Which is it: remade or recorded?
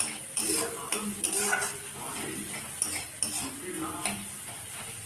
recorded